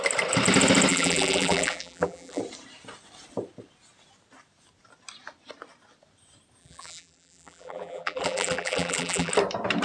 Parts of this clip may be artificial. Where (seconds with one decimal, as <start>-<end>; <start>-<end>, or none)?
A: 0.9-2.4; 6.6-9.3